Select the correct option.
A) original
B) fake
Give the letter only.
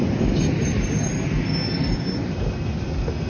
A